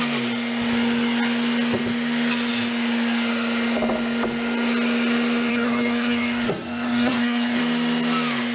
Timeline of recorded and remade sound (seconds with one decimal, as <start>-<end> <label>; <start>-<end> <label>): 0.0-5.5 recorded; 5.5-7.6 remade; 7.6-8.5 recorded